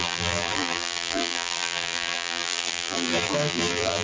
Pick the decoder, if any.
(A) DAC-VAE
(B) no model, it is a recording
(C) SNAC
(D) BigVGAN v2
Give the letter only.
D